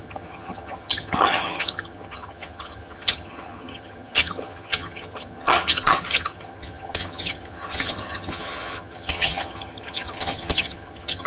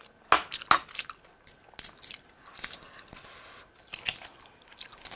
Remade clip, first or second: first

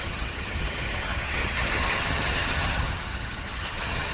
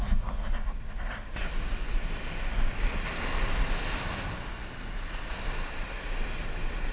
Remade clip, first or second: first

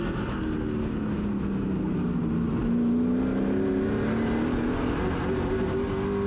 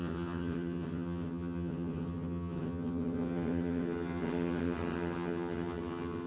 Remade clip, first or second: second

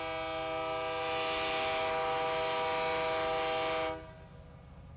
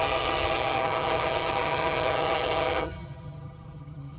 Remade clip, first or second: second